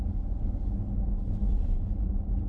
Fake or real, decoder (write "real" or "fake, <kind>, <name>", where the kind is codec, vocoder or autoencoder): real